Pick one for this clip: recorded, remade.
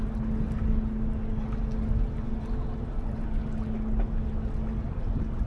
recorded